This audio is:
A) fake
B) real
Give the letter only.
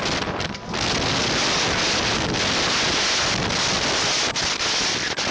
B